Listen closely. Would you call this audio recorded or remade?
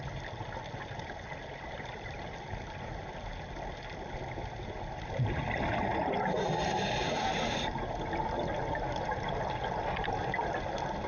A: recorded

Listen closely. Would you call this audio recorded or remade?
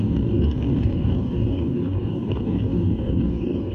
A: remade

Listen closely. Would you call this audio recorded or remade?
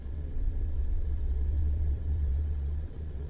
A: remade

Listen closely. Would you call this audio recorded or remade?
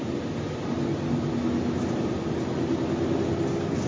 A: recorded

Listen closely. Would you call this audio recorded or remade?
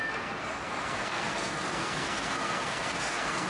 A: remade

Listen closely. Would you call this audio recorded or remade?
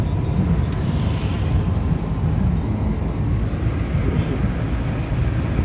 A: recorded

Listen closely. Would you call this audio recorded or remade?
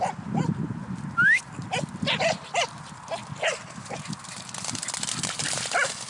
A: recorded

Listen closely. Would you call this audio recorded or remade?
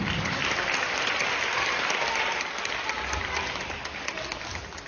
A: recorded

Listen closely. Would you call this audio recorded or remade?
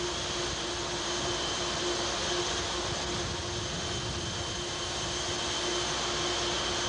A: recorded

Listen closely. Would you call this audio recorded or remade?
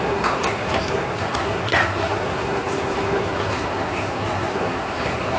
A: remade